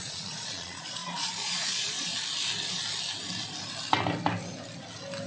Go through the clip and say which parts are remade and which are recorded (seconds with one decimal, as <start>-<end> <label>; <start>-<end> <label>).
0.0-2.1 remade; 2.1-5.3 recorded